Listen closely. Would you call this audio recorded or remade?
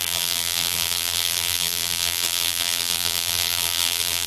remade